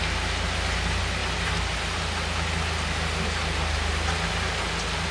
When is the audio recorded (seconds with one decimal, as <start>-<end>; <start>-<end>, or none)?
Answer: 0.0-5.1